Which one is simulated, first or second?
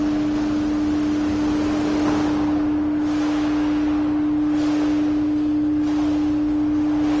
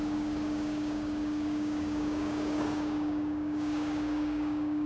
second